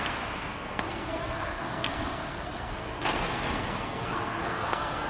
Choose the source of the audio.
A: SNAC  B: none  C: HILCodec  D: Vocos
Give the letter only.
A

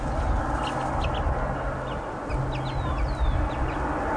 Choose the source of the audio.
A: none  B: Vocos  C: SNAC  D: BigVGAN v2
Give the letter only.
A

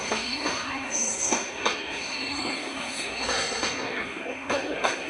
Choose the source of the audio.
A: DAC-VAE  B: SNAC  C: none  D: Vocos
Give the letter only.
B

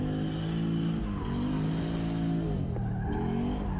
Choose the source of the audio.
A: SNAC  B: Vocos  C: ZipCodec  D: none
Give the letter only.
D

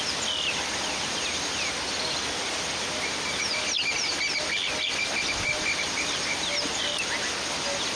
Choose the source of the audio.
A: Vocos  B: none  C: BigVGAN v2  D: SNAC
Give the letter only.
B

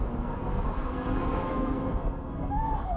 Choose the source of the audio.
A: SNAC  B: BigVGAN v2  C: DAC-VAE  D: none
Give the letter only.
A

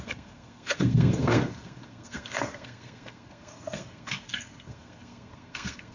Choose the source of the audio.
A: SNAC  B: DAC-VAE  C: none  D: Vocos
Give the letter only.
A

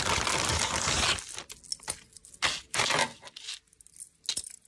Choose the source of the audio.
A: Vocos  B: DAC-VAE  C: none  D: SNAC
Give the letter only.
C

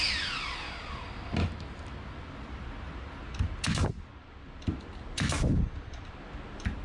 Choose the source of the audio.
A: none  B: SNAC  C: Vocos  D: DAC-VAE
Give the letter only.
A